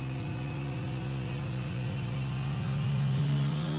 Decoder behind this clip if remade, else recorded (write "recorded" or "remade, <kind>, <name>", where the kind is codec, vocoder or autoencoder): remade, vocoder, Vocos